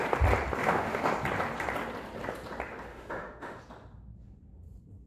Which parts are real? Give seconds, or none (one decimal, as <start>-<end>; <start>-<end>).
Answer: 0.0-0.6; 1.1-2.9; 3.6-5.1